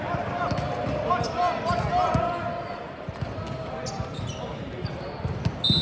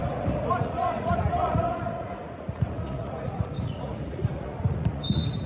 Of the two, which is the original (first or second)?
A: first